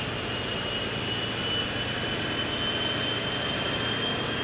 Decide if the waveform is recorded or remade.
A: recorded